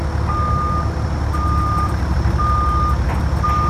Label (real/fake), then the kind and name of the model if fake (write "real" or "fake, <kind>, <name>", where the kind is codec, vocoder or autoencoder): real